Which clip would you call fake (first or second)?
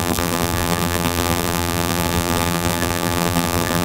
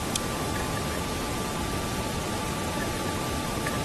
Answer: first